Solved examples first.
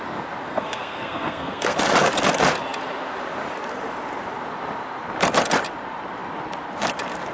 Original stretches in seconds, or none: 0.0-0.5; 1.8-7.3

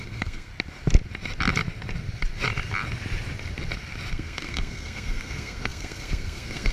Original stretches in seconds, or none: 0.5-4.1

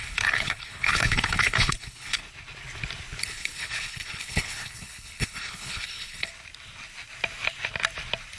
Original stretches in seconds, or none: 2.2-3.2; 6.3-8.4

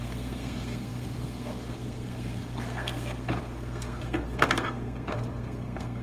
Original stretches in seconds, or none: none